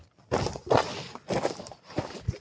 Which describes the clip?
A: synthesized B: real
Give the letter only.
B